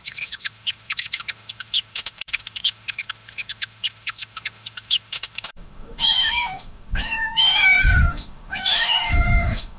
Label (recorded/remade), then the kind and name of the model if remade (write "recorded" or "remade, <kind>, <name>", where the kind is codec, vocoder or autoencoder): remade, autoencoder, DAC-VAE